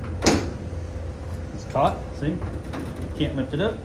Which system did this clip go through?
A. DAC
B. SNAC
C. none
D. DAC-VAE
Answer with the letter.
C